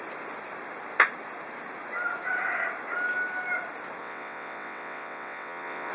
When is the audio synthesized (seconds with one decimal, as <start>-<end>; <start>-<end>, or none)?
4.0-5.9